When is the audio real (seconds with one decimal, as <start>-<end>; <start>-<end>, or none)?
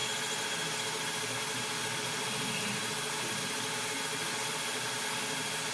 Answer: 0.0-5.7